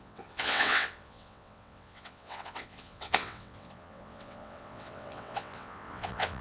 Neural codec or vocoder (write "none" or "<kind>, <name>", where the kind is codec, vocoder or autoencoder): vocoder, WaveNeXt